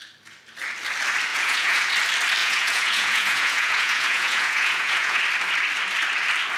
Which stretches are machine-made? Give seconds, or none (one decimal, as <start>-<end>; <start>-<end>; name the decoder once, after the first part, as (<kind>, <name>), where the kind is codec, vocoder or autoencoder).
1.3-1.9 (vocoder, Vocos); 2.4-5.2